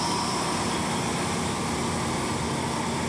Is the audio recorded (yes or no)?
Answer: yes